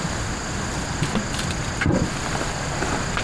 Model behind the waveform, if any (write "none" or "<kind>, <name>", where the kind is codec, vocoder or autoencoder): none